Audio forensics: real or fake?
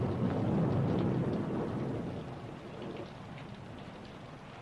real